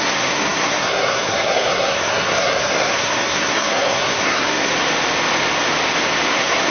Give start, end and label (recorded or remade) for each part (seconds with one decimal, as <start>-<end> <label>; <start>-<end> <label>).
0.0-4.7 remade; 4.7-6.3 recorded; 6.3-6.7 remade